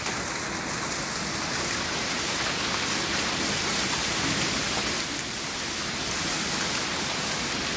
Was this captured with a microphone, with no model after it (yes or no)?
yes